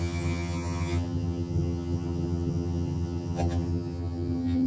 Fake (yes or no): yes